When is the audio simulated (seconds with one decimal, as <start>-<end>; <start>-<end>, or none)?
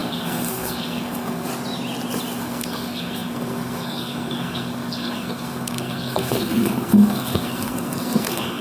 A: 0.0-1.5; 2.4-8.6